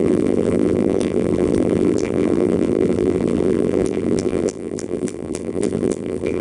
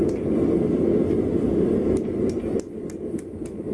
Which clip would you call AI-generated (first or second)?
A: first